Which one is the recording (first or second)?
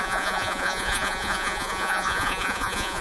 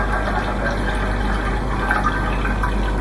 second